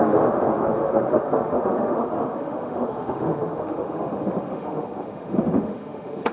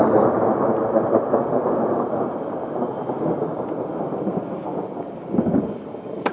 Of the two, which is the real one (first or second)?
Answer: second